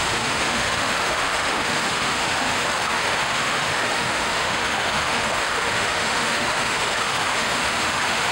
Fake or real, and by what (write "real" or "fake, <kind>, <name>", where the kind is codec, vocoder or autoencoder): fake, autoencoder, DAC-VAE